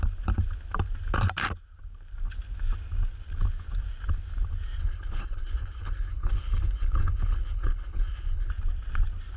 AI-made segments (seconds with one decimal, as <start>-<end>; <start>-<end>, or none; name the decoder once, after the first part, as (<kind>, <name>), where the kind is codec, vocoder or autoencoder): 4.8-8.5 (codec, HILCodec)